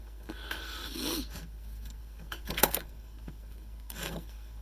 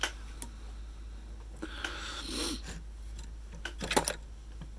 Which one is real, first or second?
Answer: second